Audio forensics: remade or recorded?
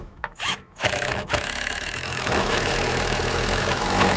remade